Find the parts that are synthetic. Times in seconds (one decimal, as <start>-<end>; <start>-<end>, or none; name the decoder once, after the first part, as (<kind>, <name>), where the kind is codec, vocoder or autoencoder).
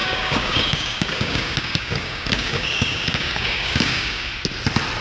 0.0-4.3 (codec, DAC)